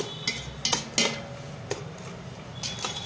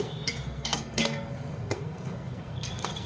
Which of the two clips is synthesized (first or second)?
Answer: second